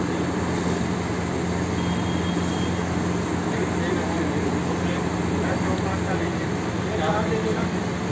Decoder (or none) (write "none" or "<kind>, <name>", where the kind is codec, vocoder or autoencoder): none